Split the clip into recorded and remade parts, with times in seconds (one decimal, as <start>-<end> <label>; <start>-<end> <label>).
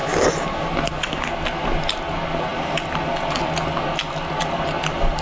0.0-5.2 recorded